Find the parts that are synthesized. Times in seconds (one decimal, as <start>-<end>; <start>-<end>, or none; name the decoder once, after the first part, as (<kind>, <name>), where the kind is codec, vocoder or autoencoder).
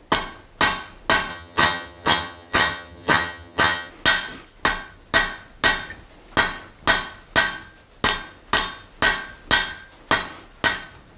1.3-3.9 (vocoder, HiFi-GAN)